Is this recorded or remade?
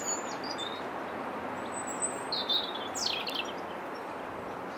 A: recorded